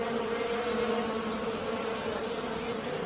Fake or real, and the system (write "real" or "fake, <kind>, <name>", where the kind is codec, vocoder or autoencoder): real